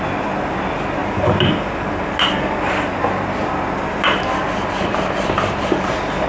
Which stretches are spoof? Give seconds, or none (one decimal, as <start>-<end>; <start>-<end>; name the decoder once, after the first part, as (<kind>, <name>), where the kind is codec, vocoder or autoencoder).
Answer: none